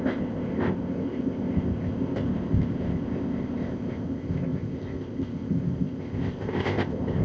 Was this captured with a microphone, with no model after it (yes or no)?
no